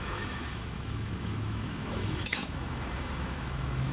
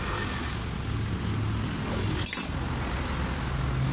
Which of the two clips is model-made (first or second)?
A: first